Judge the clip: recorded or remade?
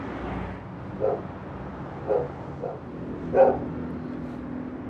recorded